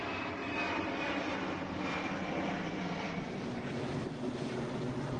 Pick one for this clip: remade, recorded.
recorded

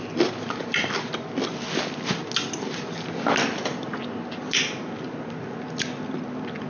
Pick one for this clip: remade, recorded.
recorded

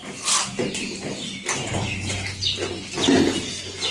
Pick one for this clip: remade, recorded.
recorded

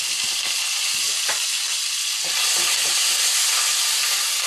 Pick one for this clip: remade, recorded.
recorded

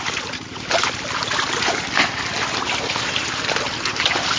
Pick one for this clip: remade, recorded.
recorded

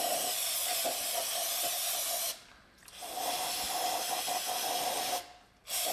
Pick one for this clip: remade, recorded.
recorded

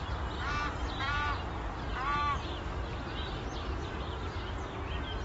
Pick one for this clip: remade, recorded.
recorded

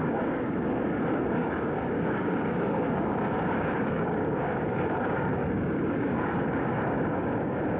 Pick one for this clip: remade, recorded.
remade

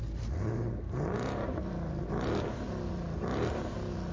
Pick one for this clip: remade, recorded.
recorded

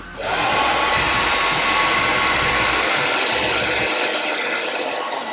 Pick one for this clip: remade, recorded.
recorded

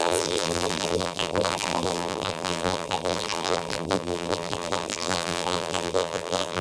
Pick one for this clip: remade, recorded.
remade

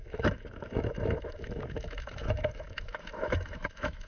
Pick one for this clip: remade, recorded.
remade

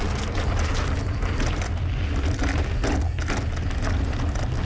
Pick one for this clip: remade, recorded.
recorded